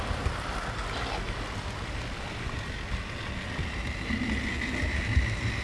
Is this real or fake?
real